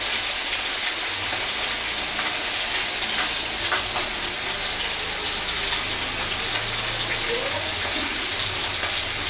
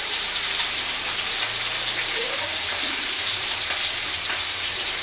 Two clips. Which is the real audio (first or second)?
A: first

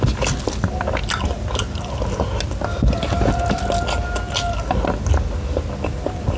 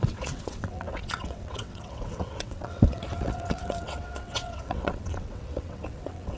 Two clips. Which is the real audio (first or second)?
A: first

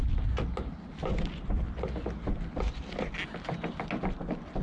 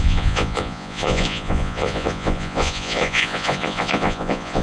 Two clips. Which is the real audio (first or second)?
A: first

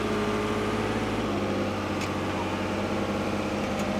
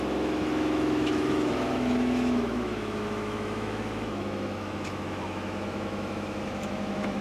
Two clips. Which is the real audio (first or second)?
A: first